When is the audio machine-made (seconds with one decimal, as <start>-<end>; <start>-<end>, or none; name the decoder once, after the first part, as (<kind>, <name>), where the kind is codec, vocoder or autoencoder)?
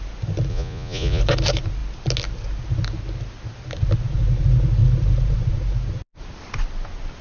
0.5-1.2 (vocoder, Vocos)